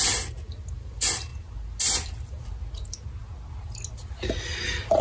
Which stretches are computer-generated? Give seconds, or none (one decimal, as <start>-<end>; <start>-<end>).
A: none